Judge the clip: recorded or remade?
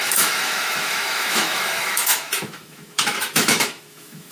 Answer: remade